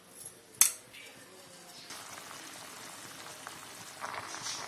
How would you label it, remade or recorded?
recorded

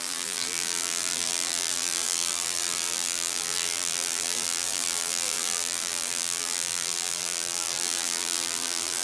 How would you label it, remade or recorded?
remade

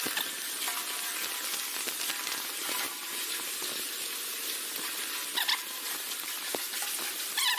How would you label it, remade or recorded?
recorded